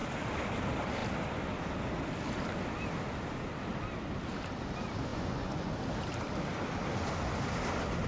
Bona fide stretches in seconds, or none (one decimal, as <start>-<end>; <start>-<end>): 0.0-5.1; 5.7-8.1